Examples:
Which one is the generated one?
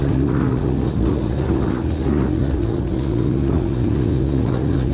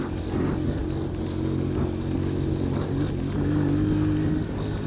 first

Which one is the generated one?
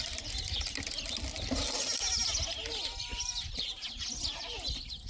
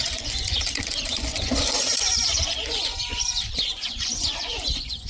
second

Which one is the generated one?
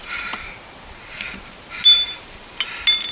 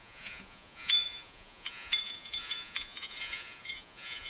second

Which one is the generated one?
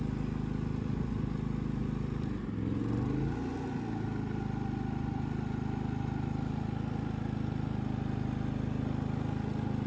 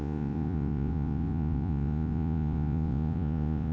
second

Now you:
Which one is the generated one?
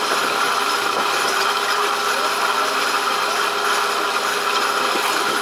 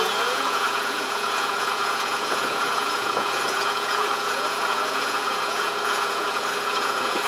second